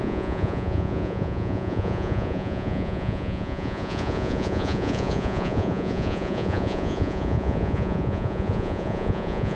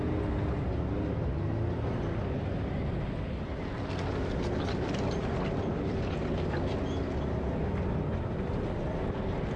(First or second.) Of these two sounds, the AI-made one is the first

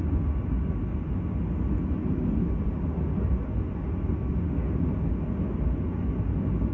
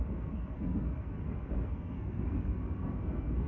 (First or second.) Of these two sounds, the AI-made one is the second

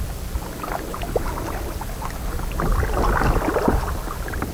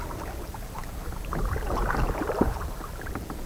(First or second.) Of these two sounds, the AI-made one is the second